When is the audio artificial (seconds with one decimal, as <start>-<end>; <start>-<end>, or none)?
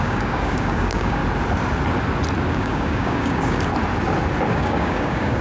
0.0-1.2; 2.5-3.7; 4.5-5.4